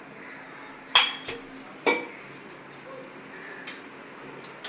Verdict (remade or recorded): recorded